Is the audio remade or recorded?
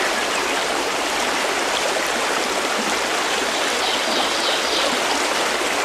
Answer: recorded